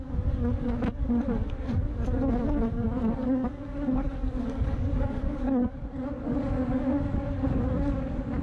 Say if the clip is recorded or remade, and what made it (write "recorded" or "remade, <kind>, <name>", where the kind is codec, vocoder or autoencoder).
remade, codec, DAC